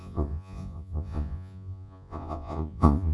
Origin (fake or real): fake